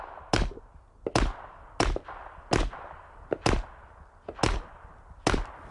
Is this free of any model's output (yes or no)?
yes